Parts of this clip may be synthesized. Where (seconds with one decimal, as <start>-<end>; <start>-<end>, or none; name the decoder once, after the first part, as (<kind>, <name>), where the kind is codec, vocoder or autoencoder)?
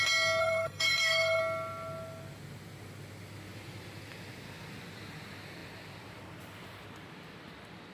0.4-1.4 (codec, SNAC)